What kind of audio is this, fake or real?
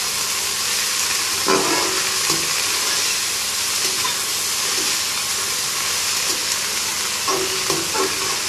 real